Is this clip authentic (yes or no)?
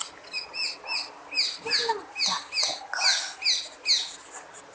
yes